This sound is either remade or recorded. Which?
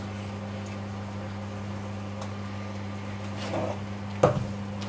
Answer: recorded